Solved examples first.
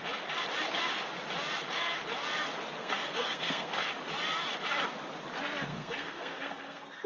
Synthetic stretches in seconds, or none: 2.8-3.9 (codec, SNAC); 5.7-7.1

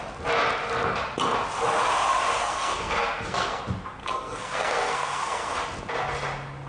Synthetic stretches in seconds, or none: 2.4-3.6 (codec, SNAC); 4.0-5.5

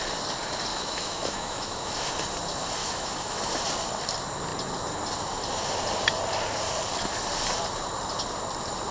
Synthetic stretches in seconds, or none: 0.7-2.1 (autoencoder, DAC-VAE); 2.8-3.4

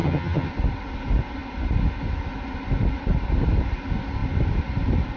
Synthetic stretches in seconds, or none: 0.0-0.5 (vocoder, HiFi-GAN)

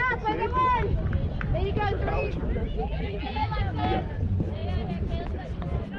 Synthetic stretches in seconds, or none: 2.8-3.6 (vocoder, BigVGAN v2)